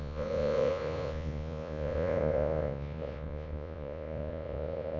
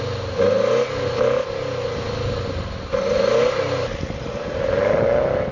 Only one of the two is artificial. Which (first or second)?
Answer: first